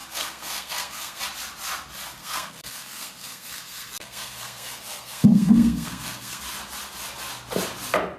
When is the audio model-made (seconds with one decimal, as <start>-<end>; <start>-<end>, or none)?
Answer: 0.0-1.2; 2.2-6.4